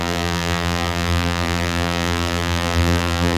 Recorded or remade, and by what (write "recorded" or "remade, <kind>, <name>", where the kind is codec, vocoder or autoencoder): remade, vocoder, BigVGAN v2